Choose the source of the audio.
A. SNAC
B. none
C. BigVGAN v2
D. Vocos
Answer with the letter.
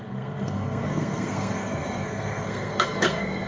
A